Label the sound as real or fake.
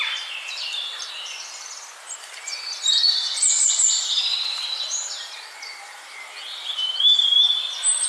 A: fake